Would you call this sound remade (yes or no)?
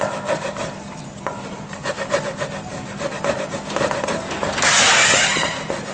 no